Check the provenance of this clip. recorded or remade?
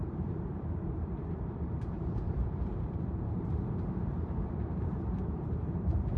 remade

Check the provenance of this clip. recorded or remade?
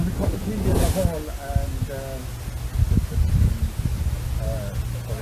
recorded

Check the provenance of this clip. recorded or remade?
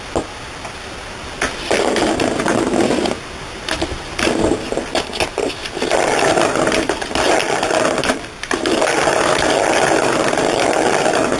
recorded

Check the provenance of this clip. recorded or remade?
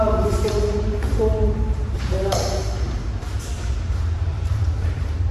remade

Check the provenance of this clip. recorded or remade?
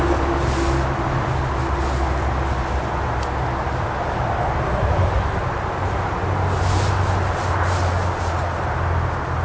recorded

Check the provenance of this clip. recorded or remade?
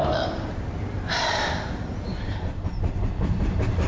remade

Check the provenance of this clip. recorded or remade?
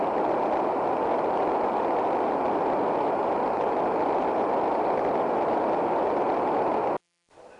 remade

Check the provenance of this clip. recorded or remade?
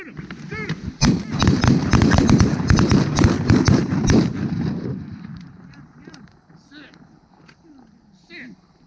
remade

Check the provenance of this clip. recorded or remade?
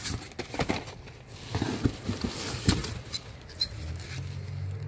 recorded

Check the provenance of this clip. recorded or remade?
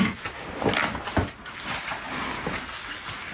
recorded